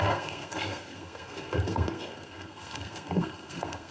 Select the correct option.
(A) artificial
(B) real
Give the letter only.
A